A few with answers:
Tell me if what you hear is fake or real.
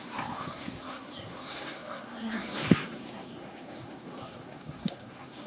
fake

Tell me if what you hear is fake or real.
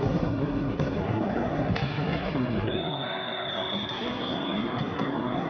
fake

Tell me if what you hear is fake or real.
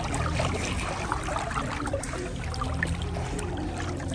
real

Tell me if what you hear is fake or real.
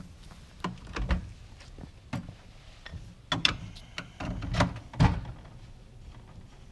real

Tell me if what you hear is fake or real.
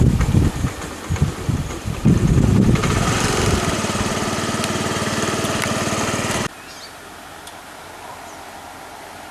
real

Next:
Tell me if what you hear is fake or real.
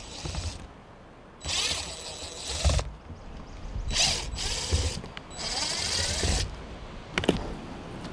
real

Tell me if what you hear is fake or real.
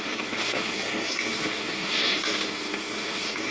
fake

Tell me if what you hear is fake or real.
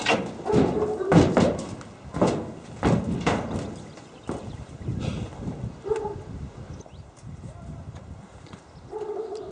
real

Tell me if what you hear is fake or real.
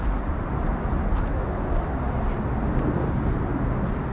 real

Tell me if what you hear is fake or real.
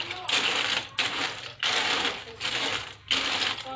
real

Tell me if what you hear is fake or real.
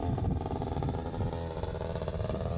real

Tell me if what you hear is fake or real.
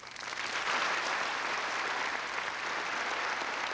real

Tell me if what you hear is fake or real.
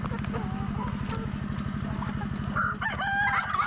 real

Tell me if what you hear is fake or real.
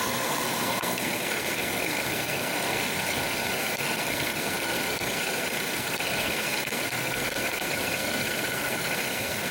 fake